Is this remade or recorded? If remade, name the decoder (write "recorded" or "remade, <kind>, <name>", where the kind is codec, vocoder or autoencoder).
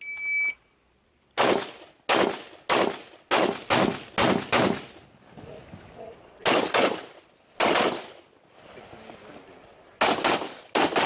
recorded